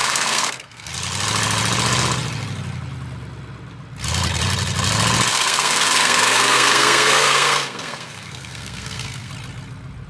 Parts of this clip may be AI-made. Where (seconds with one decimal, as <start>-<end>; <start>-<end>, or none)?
0.0-0.9; 5.3-9.3